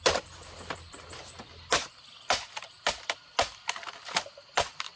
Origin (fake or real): real